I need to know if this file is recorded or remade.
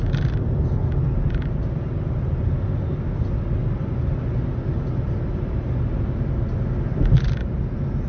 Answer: recorded